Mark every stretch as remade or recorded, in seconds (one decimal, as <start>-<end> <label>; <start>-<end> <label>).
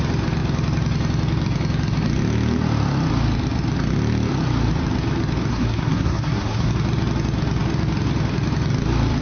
0.0-5.5 recorded; 5.5-6.7 remade; 6.7-9.2 recorded